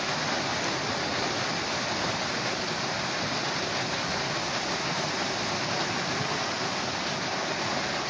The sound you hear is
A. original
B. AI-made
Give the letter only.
A